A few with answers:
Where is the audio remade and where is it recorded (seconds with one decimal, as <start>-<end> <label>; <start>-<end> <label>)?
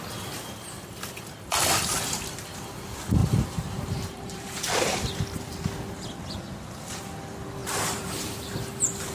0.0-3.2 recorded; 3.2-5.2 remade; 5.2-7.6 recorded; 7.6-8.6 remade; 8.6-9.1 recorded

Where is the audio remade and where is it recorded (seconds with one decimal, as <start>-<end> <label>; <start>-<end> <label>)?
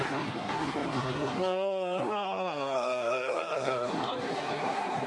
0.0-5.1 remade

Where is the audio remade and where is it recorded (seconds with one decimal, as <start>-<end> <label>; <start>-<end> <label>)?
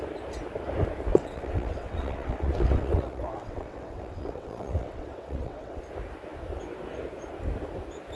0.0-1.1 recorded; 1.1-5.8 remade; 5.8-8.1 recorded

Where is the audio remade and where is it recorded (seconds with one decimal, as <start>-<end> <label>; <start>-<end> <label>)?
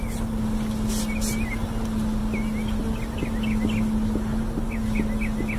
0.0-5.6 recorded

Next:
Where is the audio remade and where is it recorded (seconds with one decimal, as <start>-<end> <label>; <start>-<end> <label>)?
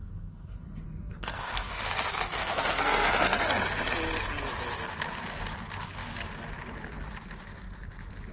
0.0-1.8 remade; 1.8-2.4 recorded; 2.4-3.1 remade; 3.1-8.3 recorded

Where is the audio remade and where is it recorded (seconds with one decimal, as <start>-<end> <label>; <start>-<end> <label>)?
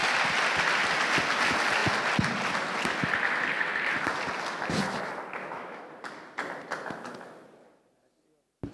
0.0-5.4 recorded; 5.4-5.9 remade; 5.9-8.7 recorded